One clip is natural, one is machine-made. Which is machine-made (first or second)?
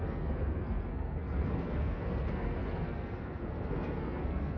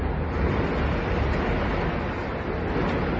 first